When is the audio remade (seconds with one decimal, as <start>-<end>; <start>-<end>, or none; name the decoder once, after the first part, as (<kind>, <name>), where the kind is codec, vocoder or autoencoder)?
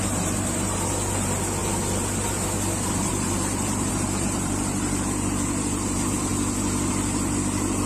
0.0-6.3 (vocoder, BigVGAN v2); 6.9-7.9